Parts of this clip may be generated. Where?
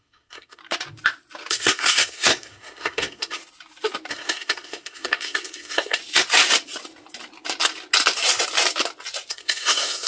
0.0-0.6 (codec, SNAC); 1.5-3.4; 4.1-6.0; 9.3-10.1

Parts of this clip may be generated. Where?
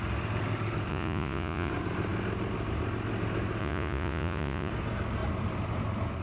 0.9-1.7 (vocoder, Vocos); 3.6-4.7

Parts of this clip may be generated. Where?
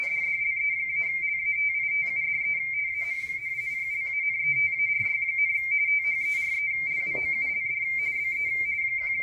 0.0-1.6 (vocoder, BigVGAN v2); 2.8-3.8; 6.9-9.2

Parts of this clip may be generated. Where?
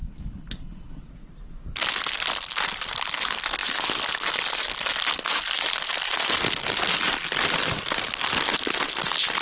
0.0-1.1 (codec, HILCodec)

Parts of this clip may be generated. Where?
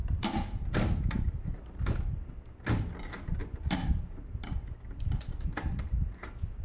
0.0-2.3 (vocoder, BigVGAN v2); 3.4-5.8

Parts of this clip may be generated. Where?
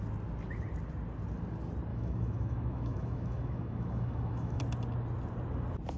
1.9-4.6 (autoencoder, DAC-VAE)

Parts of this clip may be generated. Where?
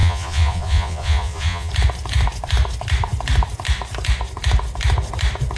0.0-1.7 (vocoder, Vocos)